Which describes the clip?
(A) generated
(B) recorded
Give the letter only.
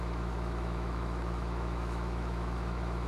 A